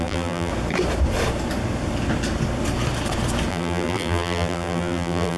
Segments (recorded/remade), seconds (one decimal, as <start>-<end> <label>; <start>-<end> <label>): 0.0-0.5 remade; 0.5-3.5 recorded; 3.5-5.4 remade